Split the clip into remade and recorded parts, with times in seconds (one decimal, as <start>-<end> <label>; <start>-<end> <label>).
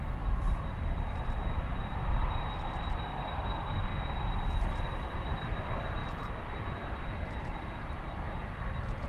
0.0-3.9 remade; 3.9-4.6 recorded; 4.6-6.0 remade; 6.0-7.6 recorded; 7.6-9.1 remade